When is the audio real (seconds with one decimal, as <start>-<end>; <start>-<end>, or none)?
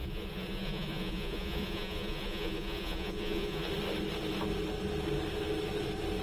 3.7-6.2